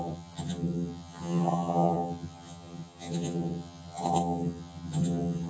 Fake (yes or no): yes